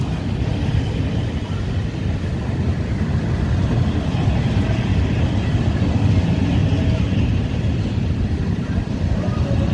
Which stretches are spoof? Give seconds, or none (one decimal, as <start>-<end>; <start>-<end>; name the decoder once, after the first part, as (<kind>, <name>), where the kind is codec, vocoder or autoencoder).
none